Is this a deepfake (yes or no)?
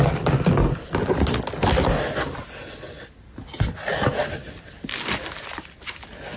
no